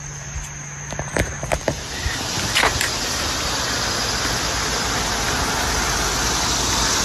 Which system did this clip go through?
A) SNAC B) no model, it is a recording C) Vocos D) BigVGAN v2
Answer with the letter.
B